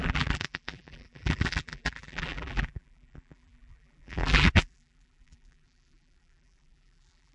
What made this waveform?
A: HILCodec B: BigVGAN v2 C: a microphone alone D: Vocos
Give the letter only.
B